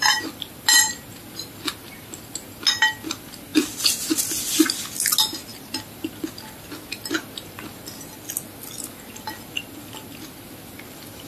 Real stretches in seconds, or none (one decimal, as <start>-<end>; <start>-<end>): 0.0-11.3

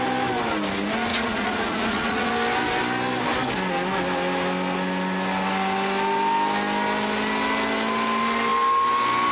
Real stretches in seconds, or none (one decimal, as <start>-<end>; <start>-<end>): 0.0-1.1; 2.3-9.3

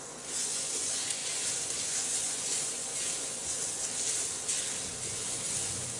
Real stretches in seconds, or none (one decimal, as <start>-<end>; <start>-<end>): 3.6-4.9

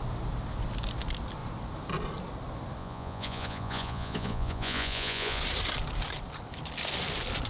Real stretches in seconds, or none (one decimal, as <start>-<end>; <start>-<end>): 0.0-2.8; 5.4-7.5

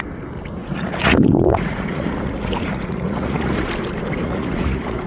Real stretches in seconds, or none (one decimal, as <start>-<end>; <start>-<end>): 0.0-0.6; 3.7-4.2

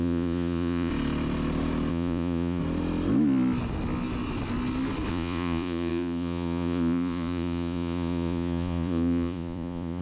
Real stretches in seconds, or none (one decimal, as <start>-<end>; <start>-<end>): 0.9-1.9; 2.6-5.1

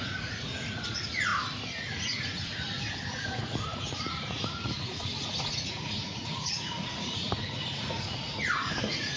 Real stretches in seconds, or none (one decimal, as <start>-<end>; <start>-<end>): 1.3-1.9; 2.5-3.1